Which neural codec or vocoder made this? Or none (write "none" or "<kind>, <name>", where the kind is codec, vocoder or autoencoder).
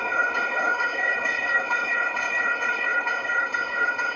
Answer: codec, HILCodec